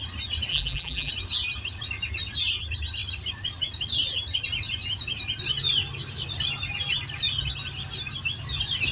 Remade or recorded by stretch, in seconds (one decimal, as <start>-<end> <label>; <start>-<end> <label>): 0.0-0.5 recorded; 0.5-1.1 remade; 1.1-8.9 recorded